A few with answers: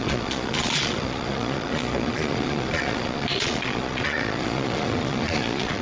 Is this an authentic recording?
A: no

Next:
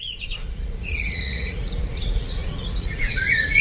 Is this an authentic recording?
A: no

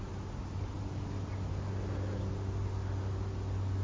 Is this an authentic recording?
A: yes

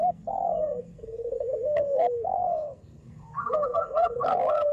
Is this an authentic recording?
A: no